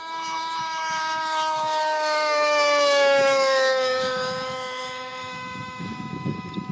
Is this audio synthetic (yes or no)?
yes